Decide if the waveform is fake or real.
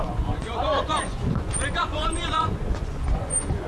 fake